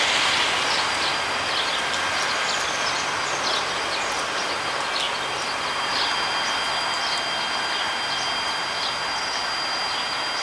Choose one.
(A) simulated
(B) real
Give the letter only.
B